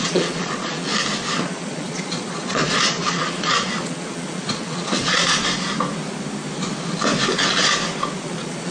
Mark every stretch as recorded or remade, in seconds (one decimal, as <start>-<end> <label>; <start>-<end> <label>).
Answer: 0.0-0.9 remade; 0.9-1.4 recorded; 1.4-5.4 remade; 5.4-8.2 recorded; 8.2-8.7 remade